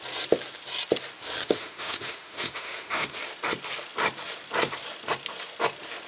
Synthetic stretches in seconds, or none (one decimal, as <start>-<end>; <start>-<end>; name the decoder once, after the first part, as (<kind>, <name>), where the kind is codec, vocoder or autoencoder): 1.4-3.2 (autoencoder, DAC-VAE)

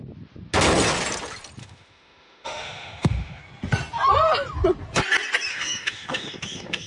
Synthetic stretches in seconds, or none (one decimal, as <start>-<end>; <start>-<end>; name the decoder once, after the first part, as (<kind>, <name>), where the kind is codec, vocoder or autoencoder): 1.6-3.4 (autoencoder, DAC-VAE); 5.5-6.9

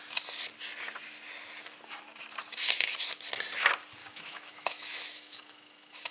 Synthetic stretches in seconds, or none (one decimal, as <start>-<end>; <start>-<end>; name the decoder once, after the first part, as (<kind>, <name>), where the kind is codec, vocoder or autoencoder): 4.0-6.1 (autoencoder, DAC-VAE)